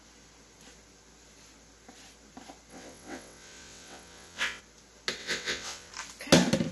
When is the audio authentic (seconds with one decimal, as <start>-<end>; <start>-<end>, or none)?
0.0-2.7; 4.6-5.2; 5.9-6.7